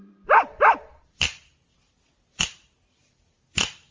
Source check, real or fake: fake